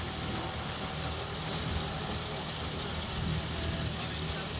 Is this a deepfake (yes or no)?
no